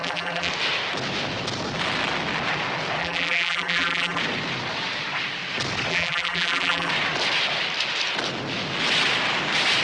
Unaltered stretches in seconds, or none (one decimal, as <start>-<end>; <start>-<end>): 0.5-3.0; 4.2-5.9; 6.9-9.8